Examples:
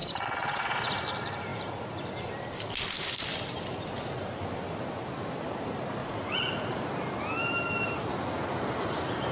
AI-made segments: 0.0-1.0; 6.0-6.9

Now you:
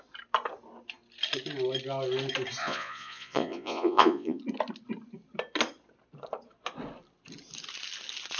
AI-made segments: 2.6-4.4

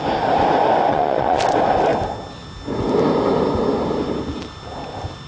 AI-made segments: 0.9-1.4

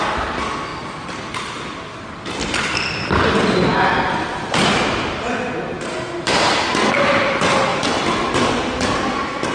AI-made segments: none